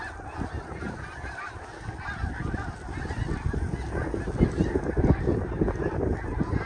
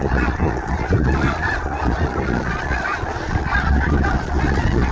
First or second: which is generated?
second